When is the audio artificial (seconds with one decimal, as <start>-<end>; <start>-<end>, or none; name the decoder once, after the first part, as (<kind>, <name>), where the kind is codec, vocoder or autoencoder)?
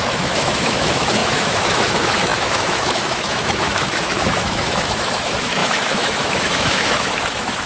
0.0-7.7 (autoencoder, DAC-VAE)